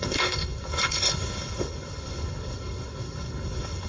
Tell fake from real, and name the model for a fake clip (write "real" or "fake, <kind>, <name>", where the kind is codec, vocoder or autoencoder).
fake, codec, HILCodec